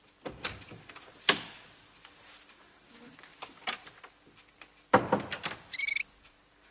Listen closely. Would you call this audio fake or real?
real